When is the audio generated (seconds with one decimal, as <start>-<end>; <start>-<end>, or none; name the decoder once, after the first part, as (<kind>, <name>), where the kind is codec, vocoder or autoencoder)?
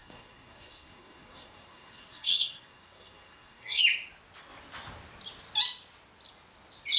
0.0-3.8 (codec, SNAC)